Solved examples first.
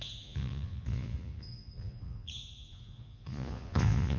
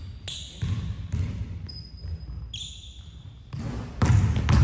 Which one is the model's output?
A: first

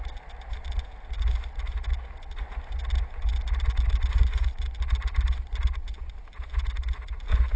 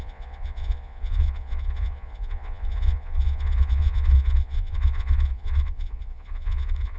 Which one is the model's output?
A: second